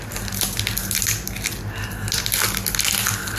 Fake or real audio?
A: real